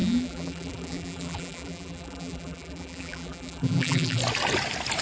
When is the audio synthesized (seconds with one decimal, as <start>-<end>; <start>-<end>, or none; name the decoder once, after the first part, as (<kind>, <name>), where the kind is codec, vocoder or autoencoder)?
0.0-4.2 (vocoder, BigVGAN v2)